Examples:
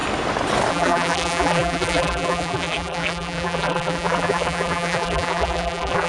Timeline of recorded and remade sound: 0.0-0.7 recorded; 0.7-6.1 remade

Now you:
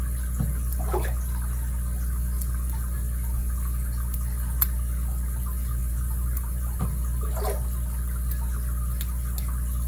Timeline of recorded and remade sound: 0.0-5.8 recorded; 5.8-6.8 remade; 6.8-9.9 recorded